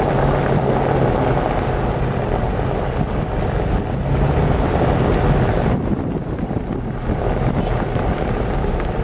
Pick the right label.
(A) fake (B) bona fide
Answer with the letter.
B